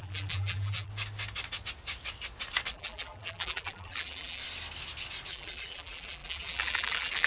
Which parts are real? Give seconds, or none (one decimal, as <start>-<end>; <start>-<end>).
0.9-2.7; 4.4-5.3

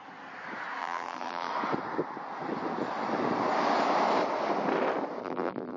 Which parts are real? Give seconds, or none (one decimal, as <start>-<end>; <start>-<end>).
0.0-0.8; 1.5-5.2